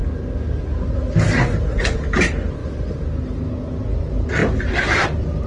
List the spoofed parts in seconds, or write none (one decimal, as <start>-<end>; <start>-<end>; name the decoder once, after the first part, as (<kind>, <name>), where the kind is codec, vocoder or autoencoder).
4.4-5.5 (vocoder, BigVGAN v2)